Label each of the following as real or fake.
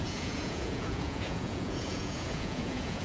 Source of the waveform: fake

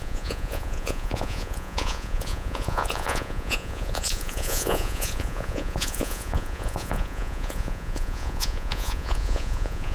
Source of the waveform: fake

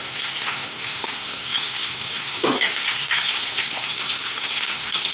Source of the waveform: fake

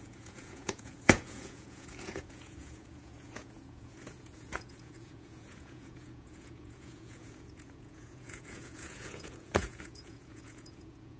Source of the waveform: fake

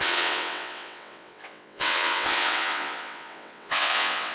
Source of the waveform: fake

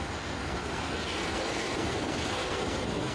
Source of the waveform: fake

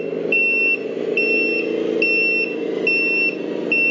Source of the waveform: real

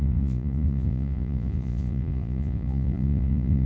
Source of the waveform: fake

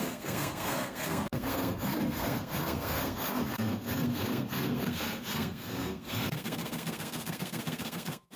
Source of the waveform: fake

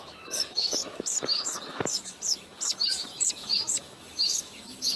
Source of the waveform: fake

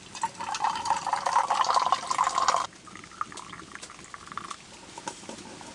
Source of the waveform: real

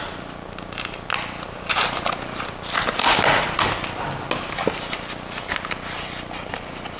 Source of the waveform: real